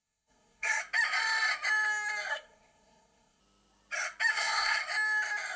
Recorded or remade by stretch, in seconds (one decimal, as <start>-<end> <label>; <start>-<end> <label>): 0.0-0.8 remade; 0.8-2.3 recorded; 2.3-3.4 remade; 3.4-4.3 recorded; 4.3-4.8 remade; 4.8-5.6 recorded